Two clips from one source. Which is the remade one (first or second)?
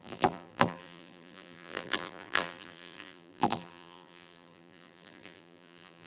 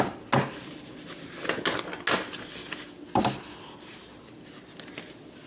first